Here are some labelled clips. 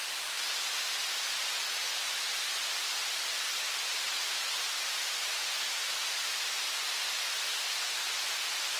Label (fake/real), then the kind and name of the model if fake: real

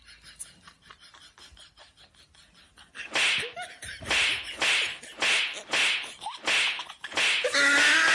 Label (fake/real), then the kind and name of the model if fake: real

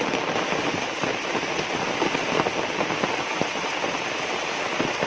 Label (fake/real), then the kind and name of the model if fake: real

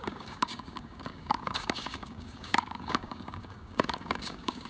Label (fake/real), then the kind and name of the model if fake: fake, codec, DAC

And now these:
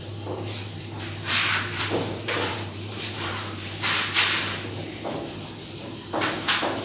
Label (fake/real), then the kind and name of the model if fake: fake, vocoder, BigVGAN v2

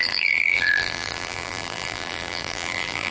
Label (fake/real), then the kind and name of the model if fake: fake, vocoder, BigVGAN v2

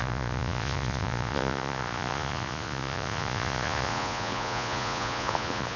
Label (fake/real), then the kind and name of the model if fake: fake, vocoder, Vocos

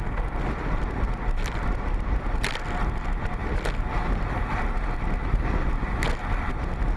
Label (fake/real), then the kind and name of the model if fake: real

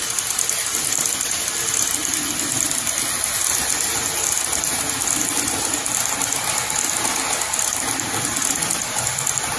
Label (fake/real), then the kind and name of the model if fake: real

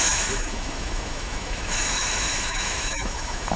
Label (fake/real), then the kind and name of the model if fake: fake, autoencoder, DAC-VAE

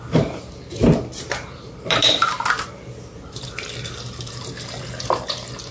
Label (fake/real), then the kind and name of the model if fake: real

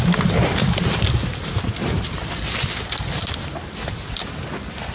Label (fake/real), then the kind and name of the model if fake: real